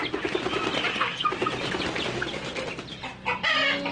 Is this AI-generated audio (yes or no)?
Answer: no